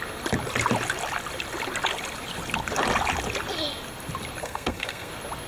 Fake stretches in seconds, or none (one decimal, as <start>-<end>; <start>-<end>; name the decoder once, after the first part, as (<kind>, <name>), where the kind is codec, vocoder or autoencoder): 4.4-5.1 (codec, SNAC)